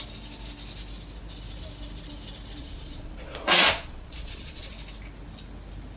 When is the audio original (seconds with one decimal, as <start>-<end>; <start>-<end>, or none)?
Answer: 0.0-2.6; 4.7-6.0